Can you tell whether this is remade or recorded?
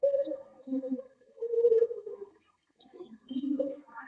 remade